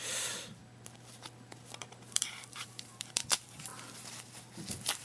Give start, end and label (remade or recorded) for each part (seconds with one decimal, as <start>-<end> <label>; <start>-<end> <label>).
0.0-0.6 remade; 0.6-1.8 recorded; 1.8-3.7 remade; 3.7-5.0 recorded